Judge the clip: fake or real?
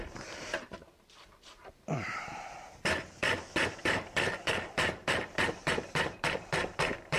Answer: fake